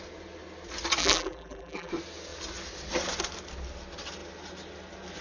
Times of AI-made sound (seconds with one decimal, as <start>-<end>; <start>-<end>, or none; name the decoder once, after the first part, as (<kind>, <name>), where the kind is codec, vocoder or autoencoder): 1.0-1.9 (vocoder, BigVGAN v2)